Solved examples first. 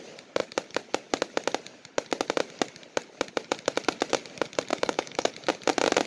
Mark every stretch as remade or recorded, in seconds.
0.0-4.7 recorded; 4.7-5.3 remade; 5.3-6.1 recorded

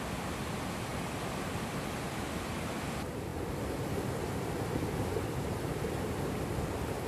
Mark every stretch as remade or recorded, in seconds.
0.0-7.1 recorded

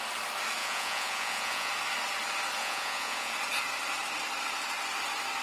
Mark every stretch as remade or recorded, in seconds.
0.0-0.6 recorded; 0.6-1.7 remade; 1.7-2.6 recorded; 2.6-3.3 remade; 3.3-5.4 recorded

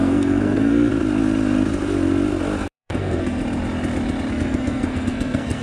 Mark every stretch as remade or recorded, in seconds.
0.0-0.9 remade; 0.9-2.7 recorded; 2.7-3.4 remade; 3.4-4.3 recorded; 4.3-5.6 remade

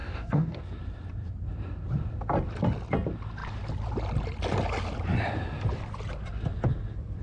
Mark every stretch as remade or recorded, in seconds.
0.0-0.6 remade; 0.6-7.2 recorded

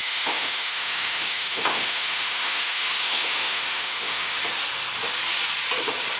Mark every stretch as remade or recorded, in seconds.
0.0-4.4 remade; 4.4-6.2 recorded

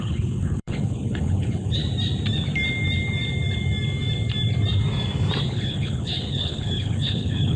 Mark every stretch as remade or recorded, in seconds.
0.0-1.8 remade; 1.8-5.5 recorded; 5.5-7.6 remade